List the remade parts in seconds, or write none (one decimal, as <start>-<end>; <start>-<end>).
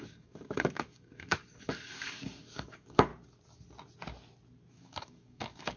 0.0-3.1; 4.7-5.8